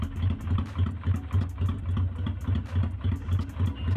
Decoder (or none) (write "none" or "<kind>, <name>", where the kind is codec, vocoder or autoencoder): none